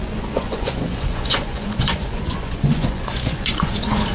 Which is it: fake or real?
fake